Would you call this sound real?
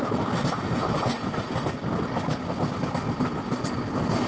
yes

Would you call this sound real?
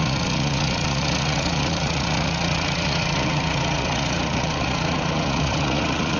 no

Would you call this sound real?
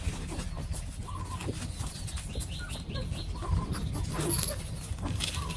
yes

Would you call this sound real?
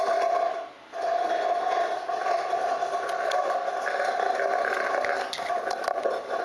yes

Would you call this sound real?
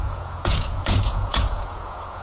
no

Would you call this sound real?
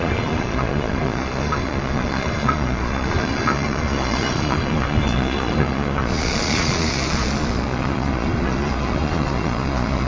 no